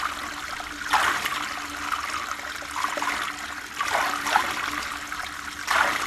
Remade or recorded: recorded